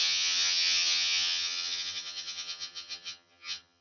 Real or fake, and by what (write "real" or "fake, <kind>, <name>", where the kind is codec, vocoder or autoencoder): fake, vocoder, HiFi-GAN